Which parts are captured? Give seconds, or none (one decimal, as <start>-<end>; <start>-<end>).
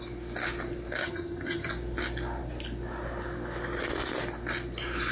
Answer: 0.0-1.0; 1.7-5.1